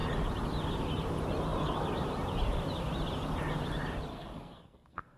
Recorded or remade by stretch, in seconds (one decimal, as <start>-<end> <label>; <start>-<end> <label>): 0.0-4.1 recorded; 4.1-5.2 remade